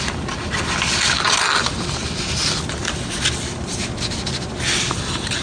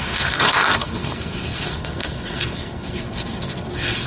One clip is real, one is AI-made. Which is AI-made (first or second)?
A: second